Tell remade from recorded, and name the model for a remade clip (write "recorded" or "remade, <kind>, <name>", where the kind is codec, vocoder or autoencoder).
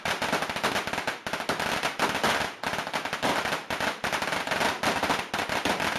recorded